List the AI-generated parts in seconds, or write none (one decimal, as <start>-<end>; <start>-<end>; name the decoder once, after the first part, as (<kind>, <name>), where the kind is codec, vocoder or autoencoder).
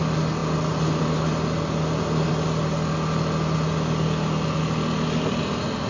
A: none